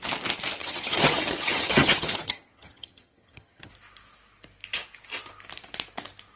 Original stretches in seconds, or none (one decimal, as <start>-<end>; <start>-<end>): 0.0-0.6; 3.7-6.4